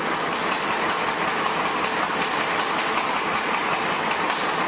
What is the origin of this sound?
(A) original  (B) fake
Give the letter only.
A